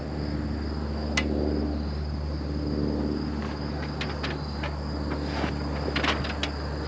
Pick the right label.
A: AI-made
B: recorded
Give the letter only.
B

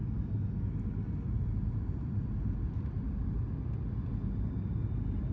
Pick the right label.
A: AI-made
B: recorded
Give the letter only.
B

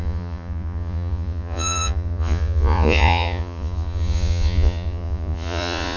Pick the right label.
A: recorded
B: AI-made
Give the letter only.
B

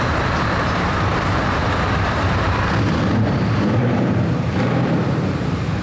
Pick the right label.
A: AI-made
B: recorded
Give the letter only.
A